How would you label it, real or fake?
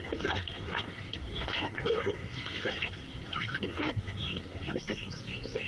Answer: fake